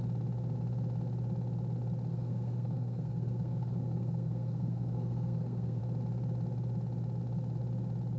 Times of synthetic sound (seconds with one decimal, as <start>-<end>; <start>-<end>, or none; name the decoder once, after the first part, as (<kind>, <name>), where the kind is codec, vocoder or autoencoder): 2.1-5.8 (codec, SNAC)